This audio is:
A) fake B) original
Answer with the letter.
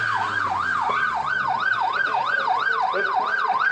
B